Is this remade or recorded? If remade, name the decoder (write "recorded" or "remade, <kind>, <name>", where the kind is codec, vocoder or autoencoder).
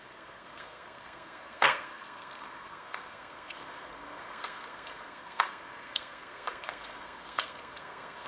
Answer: remade, codec, SNAC